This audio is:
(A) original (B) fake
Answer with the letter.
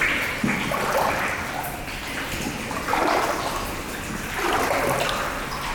A